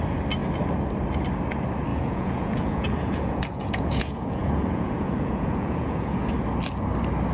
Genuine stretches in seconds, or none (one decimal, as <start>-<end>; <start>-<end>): 0.0-1.9; 6.3-7.3